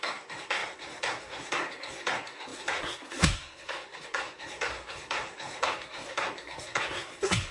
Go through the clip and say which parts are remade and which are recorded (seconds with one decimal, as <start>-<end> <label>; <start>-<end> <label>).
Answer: 0.0-7.5 remade